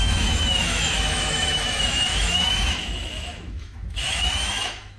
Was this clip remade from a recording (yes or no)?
yes